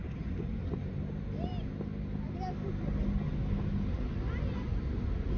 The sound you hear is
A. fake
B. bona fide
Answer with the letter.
B